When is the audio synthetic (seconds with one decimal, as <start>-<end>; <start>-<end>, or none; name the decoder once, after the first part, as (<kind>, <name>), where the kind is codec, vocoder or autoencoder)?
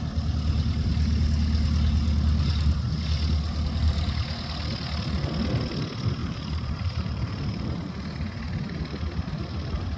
6.2-7.9 (vocoder, BigVGAN v2)